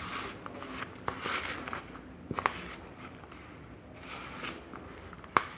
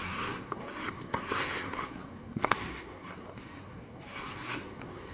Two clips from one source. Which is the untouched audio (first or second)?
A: first